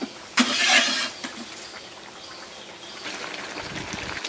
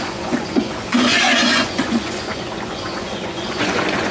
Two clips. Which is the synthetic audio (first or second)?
second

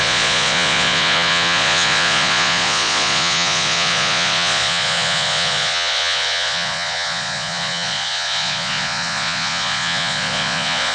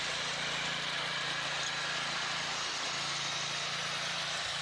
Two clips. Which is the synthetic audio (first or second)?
first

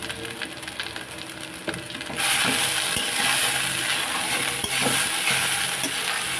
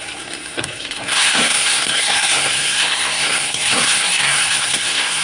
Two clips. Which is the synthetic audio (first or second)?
second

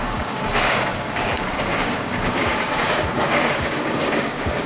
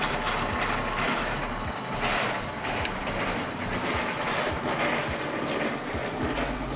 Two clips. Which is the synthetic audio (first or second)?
first